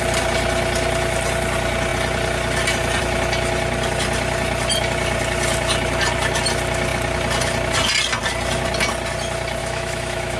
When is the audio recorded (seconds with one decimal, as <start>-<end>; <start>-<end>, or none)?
0.0-9.6